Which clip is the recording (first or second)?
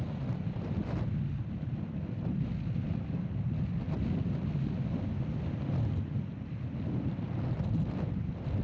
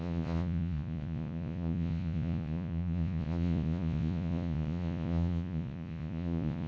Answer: first